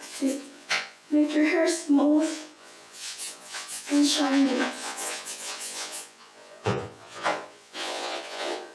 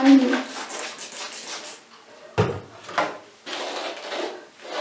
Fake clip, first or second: first